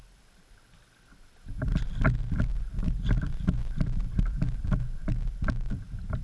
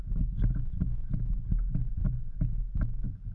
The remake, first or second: first